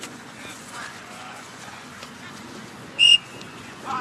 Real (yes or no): no